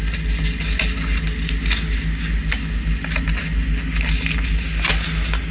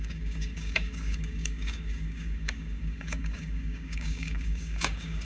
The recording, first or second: first